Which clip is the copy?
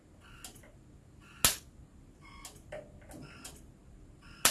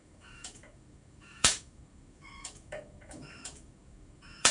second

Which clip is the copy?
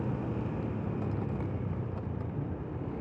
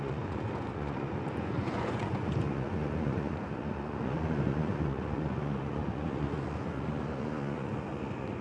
second